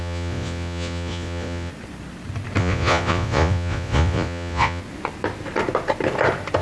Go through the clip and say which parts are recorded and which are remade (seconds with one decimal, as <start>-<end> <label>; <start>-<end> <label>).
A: 0.0-1.7 remade; 1.7-2.6 recorded; 2.6-4.8 remade; 4.8-6.6 recorded